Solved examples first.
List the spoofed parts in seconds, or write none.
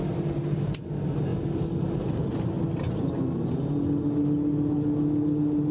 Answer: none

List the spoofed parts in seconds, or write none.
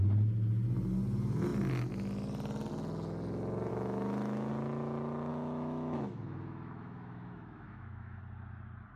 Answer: 3.7-4.5 (autoencoder, DAC-VAE); 5.3-8.2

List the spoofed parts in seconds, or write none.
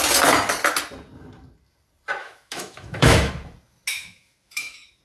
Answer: 2.2-3.3 (autoencoder, DAC-VAE); 3.9-5.0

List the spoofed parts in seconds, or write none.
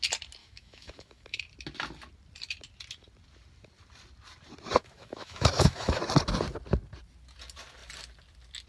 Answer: 0.4-1.4 (autoencoder, DAC-VAE); 4.8-6.0